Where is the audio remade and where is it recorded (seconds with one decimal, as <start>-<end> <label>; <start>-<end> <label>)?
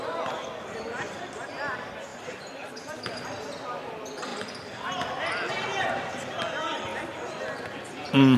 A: 0.0-2.1 recorded; 2.1-2.8 remade; 2.8-4.3 recorded; 4.3-6.1 remade; 6.1-6.9 recorded; 6.9-7.5 remade; 7.5-8.4 recorded